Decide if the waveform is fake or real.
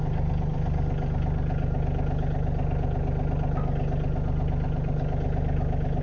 real